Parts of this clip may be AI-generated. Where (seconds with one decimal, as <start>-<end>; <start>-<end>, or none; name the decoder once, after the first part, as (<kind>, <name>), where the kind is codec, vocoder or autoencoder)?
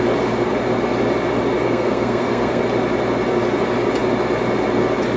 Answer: 1.6-2.6 (codec, SNAC)